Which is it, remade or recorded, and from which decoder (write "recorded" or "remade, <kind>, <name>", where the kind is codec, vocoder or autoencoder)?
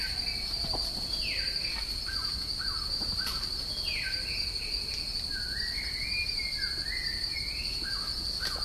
recorded